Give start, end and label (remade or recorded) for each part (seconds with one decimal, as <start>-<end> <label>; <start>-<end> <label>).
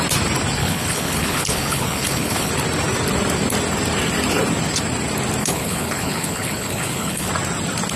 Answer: 0.0-0.6 recorded; 0.6-2.5 remade; 2.5-5.4 recorded; 5.4-7.3 remade; 7.3-8.0 recorded